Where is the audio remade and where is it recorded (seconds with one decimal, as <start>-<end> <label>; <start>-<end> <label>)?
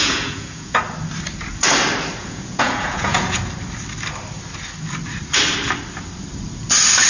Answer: 0.0-0.8 remade; 0.8-2.2 recorded; 2.2-3.4 remade; 3.4-7.1 recorded